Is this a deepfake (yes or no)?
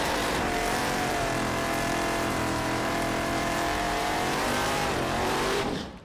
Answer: yes